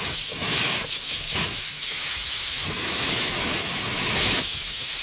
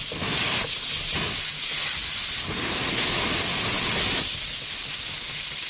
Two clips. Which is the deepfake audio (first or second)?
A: first